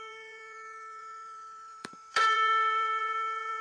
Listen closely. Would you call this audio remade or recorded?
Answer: remade